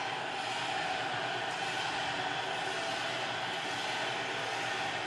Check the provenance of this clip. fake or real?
real